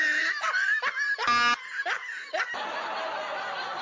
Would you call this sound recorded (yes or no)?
yes